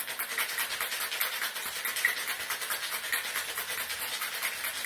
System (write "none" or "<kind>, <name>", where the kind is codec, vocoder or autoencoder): none